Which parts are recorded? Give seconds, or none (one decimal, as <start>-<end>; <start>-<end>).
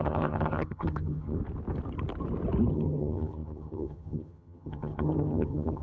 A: 1.4-2.7